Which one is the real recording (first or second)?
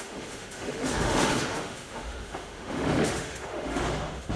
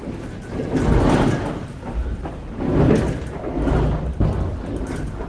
second